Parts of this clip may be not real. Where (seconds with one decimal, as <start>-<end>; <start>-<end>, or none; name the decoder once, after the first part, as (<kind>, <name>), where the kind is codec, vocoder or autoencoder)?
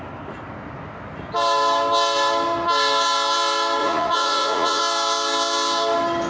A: 3.8-4.8 (vocoder, Vocos)